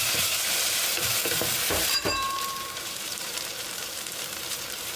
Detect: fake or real fake